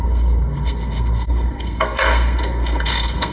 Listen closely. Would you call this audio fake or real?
fake